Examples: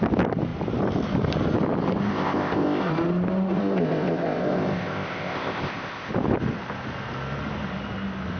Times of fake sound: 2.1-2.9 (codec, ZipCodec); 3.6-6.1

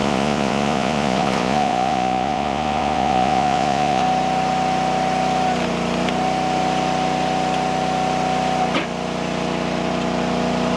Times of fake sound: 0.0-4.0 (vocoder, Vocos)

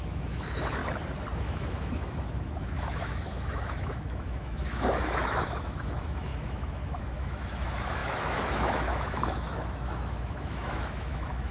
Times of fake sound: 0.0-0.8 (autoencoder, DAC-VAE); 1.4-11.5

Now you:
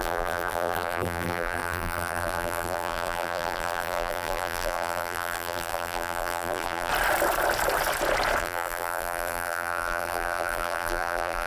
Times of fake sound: 0.0-6.9 (vocoder, BigVGAN v2); 8.4-11.5